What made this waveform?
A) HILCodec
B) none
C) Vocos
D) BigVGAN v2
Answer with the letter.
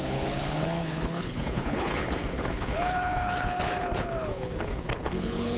A